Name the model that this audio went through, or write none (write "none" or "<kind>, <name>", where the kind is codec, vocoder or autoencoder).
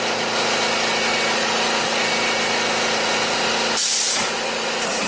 none